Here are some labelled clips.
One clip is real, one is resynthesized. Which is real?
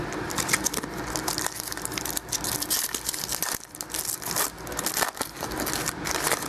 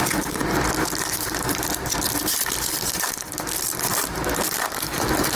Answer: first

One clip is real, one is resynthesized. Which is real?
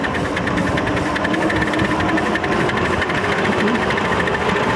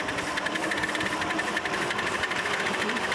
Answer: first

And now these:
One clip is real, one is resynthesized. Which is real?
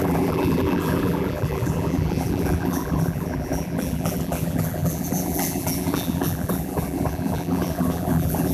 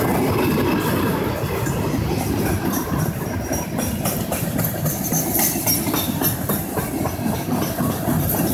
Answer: second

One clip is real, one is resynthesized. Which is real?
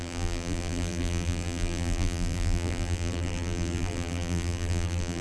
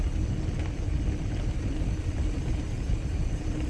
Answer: second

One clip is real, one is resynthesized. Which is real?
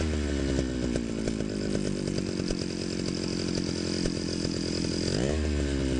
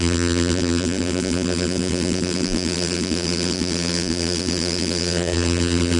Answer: first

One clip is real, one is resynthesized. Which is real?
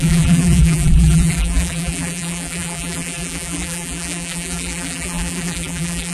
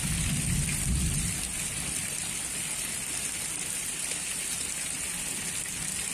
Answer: second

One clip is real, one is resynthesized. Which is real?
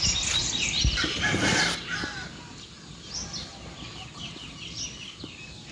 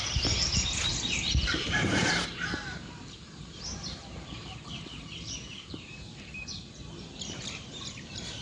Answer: first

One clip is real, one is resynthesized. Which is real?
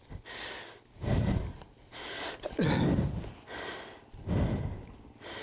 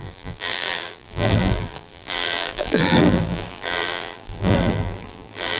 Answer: first